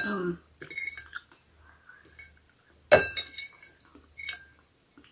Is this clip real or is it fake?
real